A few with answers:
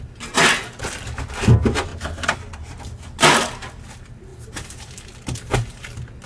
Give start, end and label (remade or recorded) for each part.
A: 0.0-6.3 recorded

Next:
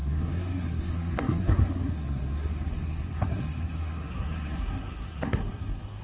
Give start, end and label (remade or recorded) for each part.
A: 0.0-6.0 remade